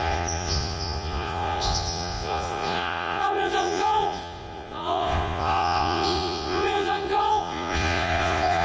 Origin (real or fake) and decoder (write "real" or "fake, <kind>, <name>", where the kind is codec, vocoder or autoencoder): fake, vocoder, Vocos